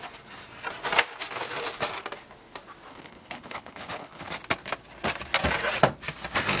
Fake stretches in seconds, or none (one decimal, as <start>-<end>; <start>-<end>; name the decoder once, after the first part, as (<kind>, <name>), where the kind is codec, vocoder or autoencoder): 2.9-4.3 (codec, HILCodec)